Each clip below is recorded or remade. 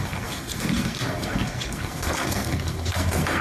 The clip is remade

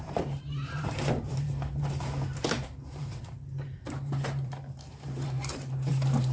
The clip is remade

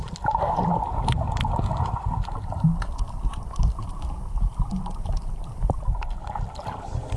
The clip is recorded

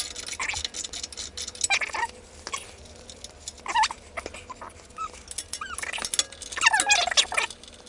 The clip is recorded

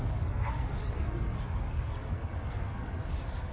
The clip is remade